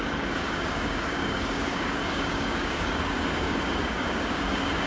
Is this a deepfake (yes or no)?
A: yes